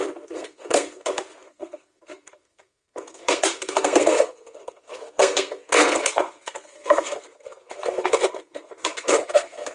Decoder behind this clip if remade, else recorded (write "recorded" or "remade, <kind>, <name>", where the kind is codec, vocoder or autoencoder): remade, codec, SNAC